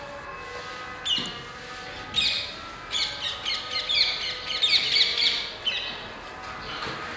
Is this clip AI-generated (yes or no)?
no